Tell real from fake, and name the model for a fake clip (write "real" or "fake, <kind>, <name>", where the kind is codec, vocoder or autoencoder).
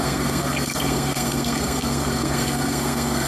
fake, codec, SNAC